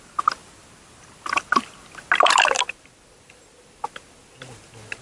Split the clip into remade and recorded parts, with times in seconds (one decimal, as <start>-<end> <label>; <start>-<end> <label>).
0.0-5.0 recorded